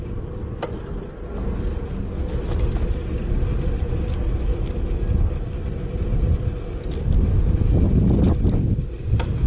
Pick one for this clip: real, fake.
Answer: real